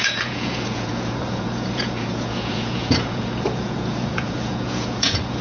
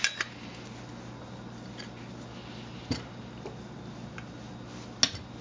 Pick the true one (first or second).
second